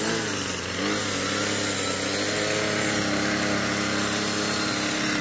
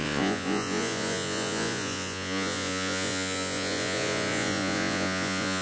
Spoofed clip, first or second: second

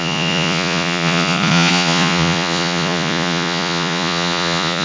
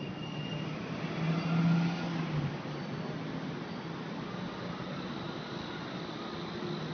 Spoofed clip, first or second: first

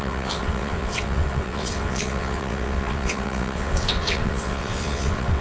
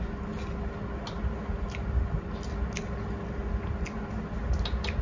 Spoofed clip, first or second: first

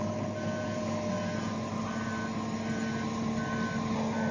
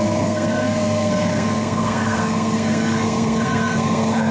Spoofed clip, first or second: second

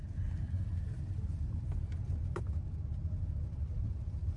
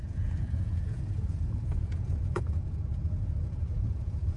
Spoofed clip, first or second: second